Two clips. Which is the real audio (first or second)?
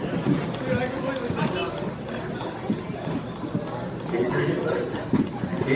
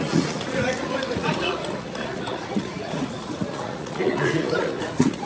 first